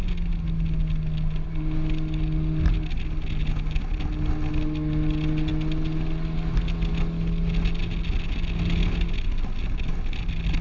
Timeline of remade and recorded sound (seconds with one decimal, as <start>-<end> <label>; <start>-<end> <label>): 0.0-10.6 recorded